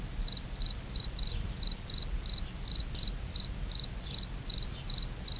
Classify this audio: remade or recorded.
recorded